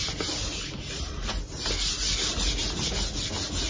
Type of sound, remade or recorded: recorded